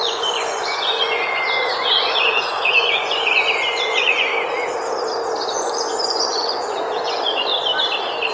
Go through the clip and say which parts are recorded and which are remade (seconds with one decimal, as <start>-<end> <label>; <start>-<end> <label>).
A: 0.0-4.3 remade; 4.3-5.4 recorded; 5.4-7.5 remade; 7.5-8.3 recorded